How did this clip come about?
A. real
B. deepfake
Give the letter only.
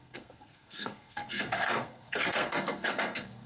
B